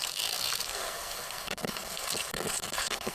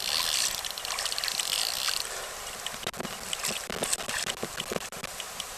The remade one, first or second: first